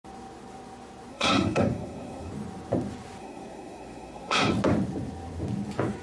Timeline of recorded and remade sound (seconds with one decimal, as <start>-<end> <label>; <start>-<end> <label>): 0.0-1.1 recorded; 1.1-2.3 remade; 2.3-3.2 recorded; 3.2-4.5 remade; 4.5-6.0 recorded